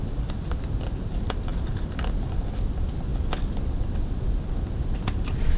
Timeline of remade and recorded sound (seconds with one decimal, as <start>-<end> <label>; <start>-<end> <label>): 0.0-1.5 recorded; 1.5-2.5 remade; 2.5-5.6 recorded